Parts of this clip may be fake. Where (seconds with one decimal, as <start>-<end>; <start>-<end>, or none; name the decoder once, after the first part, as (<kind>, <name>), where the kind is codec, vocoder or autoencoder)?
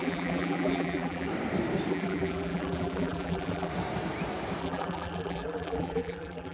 0.0-1.3 (vocoder, BigVGAN v2); 1.9-3.7; 4.6-6.5